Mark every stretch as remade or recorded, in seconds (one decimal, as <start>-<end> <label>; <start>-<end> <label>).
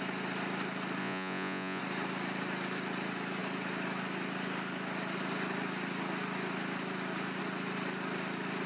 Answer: 0.0-1.0 recorded; 1.0-1.8 remade; 1.8-8.7 recorded